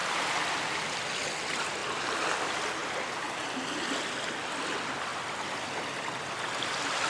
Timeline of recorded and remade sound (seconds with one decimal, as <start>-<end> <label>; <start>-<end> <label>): 0.0-0.9 remade; 0.9-5.1 recorded; 5.1-6.3 remade; 6.3-7.1 recorded